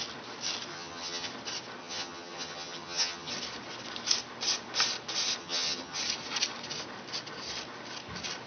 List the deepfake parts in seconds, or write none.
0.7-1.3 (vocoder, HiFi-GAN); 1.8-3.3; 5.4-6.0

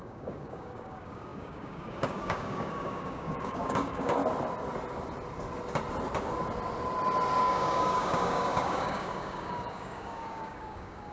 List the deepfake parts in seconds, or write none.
0.0-4.2 (codec, DAC); 7.4-11.1

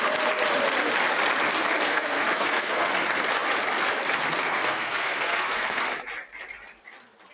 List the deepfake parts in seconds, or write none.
1.9-2.9 (codec, SNAC); 4.4-5.8

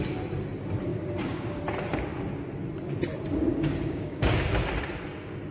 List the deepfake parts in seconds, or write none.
0.9-1.6 (codec, DAC); 3.5-4.5

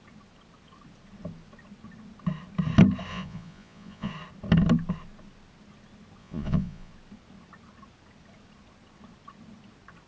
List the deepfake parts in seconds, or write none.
3.1-4.1 (vocoder, Vocos); 6.2-6.9